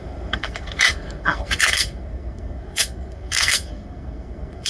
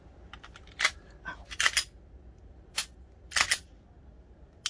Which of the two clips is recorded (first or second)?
second